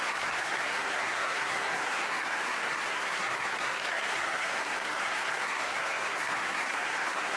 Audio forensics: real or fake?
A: fake